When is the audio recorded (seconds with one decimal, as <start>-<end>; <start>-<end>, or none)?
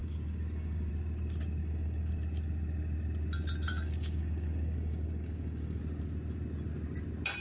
0.9-1.6; 2.1-3.7; 5.8-7.4